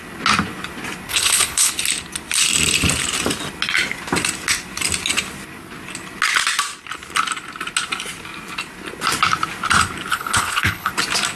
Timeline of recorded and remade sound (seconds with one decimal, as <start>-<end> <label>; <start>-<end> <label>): 0.0-1.1 recorded; 1.1-1.7 remade; 1.7-10.1 recorded; 10.1-10.9 remade; 10.9-11.4 recorded